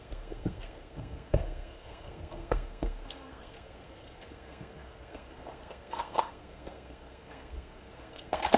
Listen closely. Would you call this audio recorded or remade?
remade